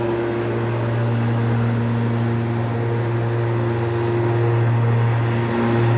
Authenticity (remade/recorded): recorded